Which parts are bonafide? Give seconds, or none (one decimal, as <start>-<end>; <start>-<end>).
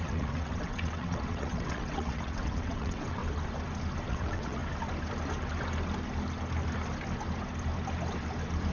3.2-4.1; 4.6-8.7